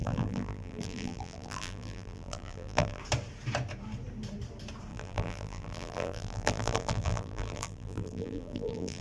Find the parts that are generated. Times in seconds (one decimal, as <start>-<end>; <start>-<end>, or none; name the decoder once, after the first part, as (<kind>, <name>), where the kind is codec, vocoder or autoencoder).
0.0-3.0 (vocoder, BigVGAN v2); 4.9-9.0